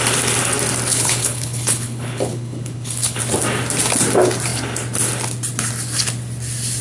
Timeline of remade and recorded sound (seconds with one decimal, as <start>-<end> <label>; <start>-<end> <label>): 0.0-0.9 recorded; 0.9-3.2 remade; 3.2-6.8 recorded